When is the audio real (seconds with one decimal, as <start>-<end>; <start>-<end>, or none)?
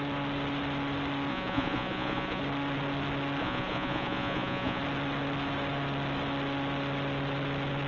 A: 0.0-1.3; 2.4-3.4; 4.8-7.9